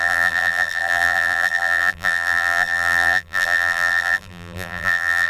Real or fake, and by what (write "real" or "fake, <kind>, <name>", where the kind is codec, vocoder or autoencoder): fake, vocoder, BigVGAN v2